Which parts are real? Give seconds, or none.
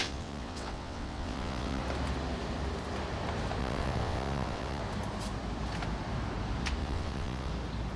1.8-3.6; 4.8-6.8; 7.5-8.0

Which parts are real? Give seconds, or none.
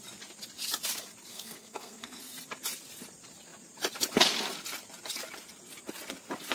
0.0-1.3; 2.2-6.5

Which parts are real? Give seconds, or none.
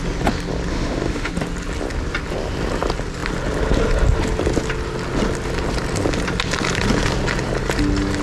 0.0-0.7; 1.3-8.2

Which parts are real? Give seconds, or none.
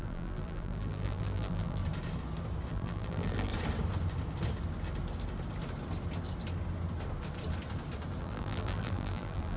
1.8-2.7; 3.5-8.2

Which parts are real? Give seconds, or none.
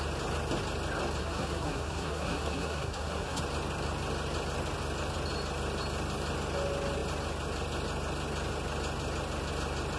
0.0-1.2; 3.4-10.0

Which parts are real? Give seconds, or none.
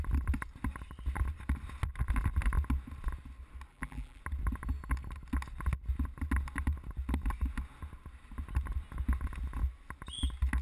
0.0-3.7; 4.2-10.6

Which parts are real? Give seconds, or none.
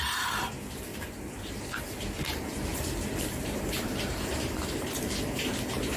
0.0-0.9; 1.6-2.7; 5.2-6.0